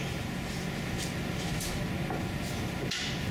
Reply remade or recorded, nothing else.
recorded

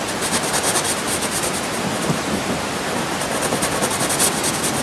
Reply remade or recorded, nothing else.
recorded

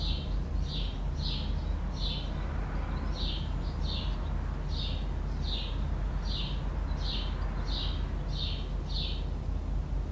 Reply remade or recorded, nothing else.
recorded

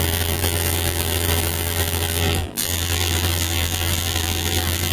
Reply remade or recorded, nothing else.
remade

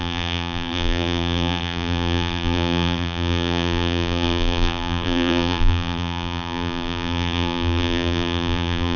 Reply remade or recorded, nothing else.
remade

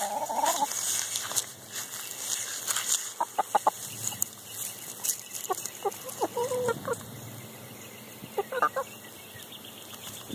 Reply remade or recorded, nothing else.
recorded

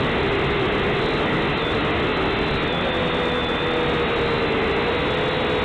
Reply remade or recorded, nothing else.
recorded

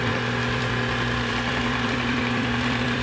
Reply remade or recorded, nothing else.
remade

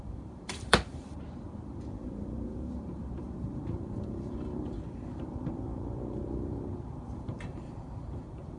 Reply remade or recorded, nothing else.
remade